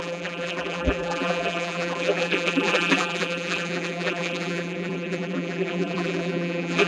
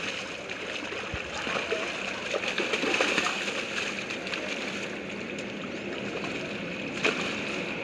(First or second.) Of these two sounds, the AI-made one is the first